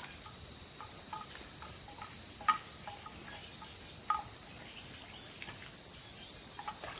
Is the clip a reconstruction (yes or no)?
no